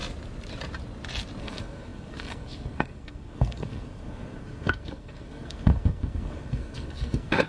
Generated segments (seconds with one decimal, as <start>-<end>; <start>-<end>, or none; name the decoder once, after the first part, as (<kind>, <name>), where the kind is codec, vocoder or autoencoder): 1.4-7.5 (codec, SNAC)

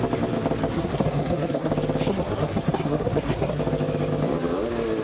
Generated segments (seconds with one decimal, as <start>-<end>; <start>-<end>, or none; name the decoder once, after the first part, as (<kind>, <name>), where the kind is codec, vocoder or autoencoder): 0.7-1.7 (codec, SNAC); 2.1-3.6

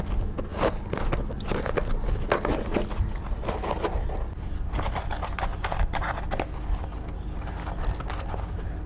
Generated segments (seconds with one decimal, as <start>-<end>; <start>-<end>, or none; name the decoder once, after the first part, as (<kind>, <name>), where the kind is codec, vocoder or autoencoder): none

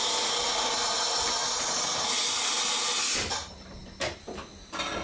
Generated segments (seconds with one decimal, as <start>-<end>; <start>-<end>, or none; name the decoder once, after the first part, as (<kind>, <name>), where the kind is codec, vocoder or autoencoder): none